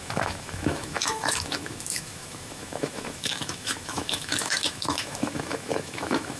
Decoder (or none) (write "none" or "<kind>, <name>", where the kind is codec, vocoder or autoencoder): autoencoder, DAC-VAE